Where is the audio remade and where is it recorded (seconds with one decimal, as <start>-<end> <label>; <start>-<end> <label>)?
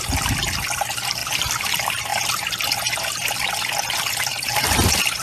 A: 0.0-2.1 remade; 2.1-3.0 recorded; 3.0-5.2 remade